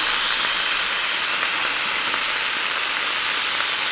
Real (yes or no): yes